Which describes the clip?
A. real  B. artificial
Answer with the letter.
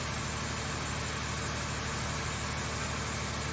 A